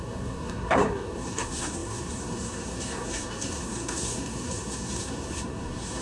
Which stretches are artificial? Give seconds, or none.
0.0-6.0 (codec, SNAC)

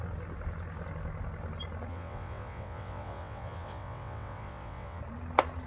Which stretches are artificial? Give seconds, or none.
1.9-5.0 (vocoder, WaveNeXt)

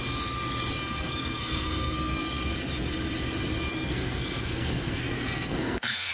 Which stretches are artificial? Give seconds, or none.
0.8-2.2 (codec, SNAC); 3.7-6.1

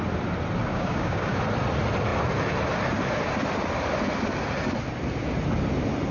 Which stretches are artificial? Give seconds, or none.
0.7-1.4 (codec, DAC)

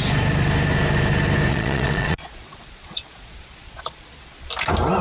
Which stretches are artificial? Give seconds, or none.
1.5-4.5 (vocoder, Vocos)

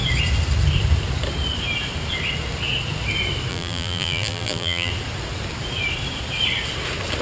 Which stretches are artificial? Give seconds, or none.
3.5-4.9 (vocoder, BigVGAN v2)

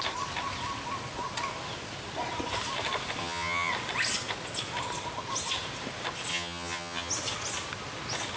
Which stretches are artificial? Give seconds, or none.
3.2-3.7 (vocoder, HiFi-GAN); 6.3-7.1

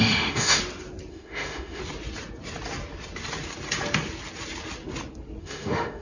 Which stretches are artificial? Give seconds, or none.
0.0-0.6 (autoencoder, DAC-VAE); 1.1-1.8; 5.4-6.0